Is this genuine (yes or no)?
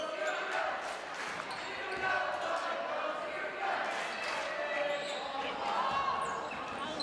yes